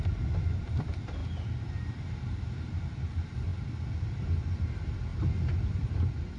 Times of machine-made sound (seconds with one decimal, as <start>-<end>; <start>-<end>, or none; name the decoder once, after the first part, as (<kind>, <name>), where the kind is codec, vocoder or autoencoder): 0.0-1.2 (vocoder, BigVGAN v2); 3.0-5.1; 5.7-6.4